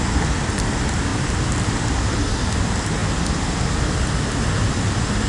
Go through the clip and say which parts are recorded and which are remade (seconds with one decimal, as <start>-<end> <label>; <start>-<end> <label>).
0.0-1.1 recorded; 1.1-2.2 remade; 2.2-5.3 recorded